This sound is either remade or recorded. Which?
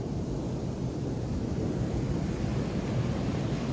recorded